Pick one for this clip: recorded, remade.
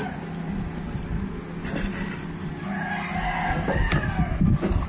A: recorded